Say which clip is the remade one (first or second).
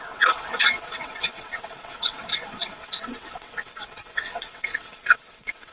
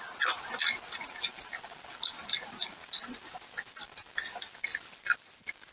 first